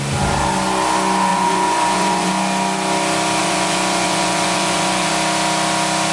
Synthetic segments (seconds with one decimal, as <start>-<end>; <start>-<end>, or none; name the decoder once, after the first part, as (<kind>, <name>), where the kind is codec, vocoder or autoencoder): 1.3-2.3 (vocoder, Vocos); 3.4-5.1